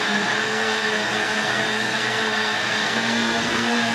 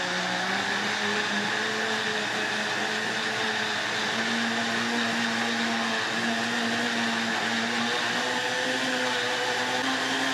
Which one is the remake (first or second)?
first